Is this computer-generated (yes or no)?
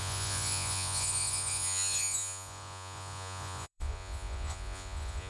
yes